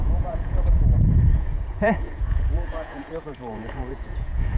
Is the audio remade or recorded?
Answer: remade